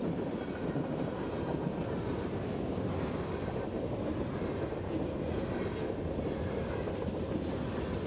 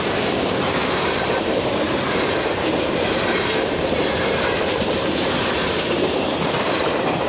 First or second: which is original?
first